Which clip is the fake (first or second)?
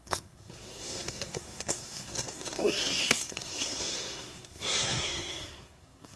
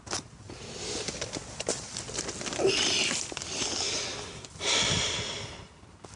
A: first